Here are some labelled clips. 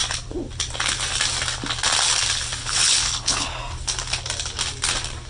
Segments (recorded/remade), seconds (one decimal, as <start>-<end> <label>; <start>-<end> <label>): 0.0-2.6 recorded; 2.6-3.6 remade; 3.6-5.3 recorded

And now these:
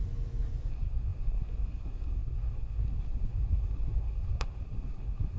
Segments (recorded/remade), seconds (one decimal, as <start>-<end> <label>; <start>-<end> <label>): 0.0-0.7 recorded; 0.7-5.4 remade

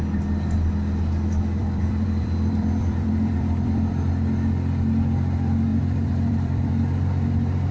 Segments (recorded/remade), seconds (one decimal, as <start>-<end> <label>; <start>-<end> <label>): 0.0-1.6 recorded; 1.6-4.1 remade; 4.1-5.7 recorded; 5.7-7.7 remade